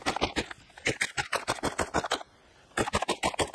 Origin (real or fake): real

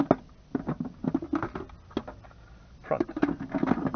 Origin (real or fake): real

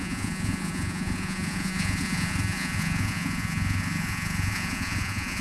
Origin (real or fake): fake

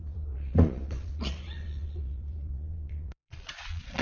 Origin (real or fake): fake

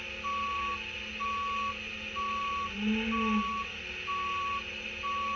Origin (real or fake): real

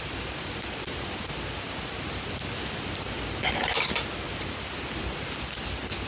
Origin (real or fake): real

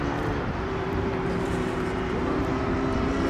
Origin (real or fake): fake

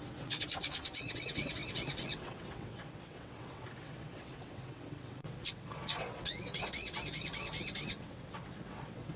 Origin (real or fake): fake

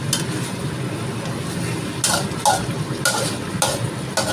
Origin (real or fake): real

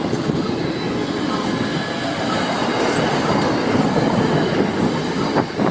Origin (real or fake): real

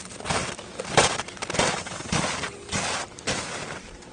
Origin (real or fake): real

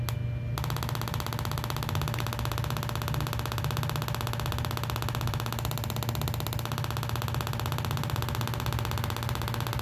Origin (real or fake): real